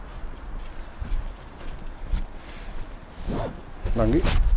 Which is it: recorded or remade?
recorded